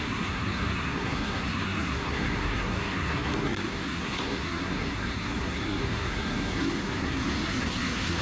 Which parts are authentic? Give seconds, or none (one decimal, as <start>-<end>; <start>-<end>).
none

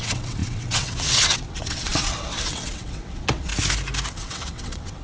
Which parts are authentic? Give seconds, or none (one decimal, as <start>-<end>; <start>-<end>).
3.5-4.1

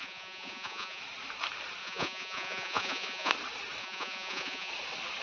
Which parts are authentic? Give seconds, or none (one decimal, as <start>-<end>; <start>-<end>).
1.0-1.8; 3.3-3.8; 4.7-5.2